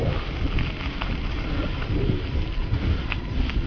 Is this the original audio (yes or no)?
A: yes